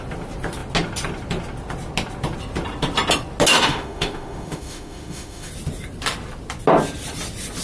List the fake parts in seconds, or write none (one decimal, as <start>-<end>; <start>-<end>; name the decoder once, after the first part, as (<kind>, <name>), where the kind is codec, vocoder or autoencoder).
3.5-5.5 (autoencoder, DAC-VAE)